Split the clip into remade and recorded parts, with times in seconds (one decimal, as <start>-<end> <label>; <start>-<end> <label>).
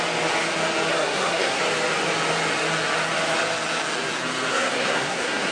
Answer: 0.0-0.9 recorded; 0.9-1.6 remade; 1.6-4.5 recorded; 4.5-5.5 remade